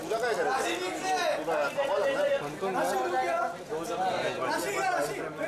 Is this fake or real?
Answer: real